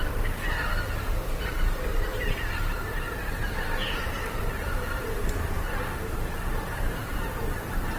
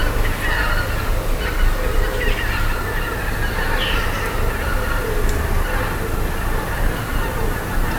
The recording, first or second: second